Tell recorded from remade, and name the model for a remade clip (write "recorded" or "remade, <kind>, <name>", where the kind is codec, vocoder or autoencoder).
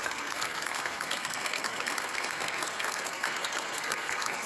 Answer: remade, codec, SNAC